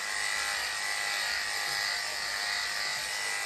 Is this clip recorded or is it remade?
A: recorded